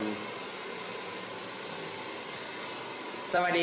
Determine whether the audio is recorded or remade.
remade